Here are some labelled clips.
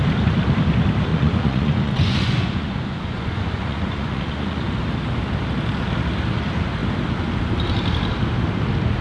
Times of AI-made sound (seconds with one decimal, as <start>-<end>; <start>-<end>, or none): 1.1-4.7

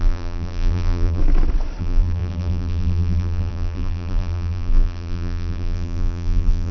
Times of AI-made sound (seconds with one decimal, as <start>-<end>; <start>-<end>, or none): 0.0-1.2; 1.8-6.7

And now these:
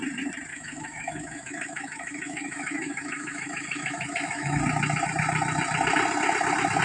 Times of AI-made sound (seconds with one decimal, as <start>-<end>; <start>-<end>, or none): 0.5-4.6

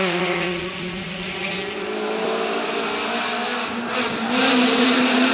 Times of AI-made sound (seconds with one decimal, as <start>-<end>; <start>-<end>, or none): 0.0-1.6; 4.8-5.3

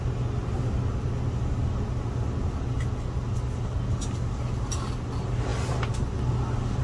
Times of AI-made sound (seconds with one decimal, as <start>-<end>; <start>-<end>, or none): none

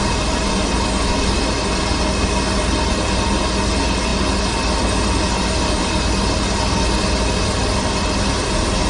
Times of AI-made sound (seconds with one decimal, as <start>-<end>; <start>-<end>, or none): none

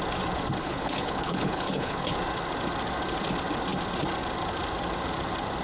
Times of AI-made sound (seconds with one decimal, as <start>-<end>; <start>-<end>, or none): 0.6-2.1